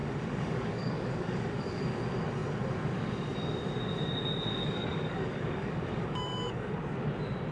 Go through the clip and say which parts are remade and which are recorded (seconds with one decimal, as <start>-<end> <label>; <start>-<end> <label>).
0.0-1.8 remade; 1.8-4.6 recorded; 4.6-6.8 remade; 6.8-7.5 recorded